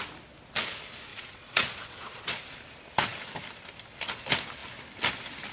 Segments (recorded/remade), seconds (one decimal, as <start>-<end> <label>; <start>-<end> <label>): 0.0-1.1 recorded; 1.1-2.4 remade; 2.4-5.5 recorded